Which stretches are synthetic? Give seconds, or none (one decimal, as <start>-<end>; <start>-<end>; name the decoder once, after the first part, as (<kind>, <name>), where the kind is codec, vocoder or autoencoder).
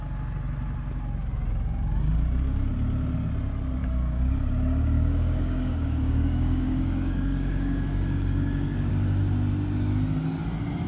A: 3.8-8.9 (codec, DAC)